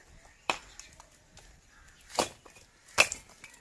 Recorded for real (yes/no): no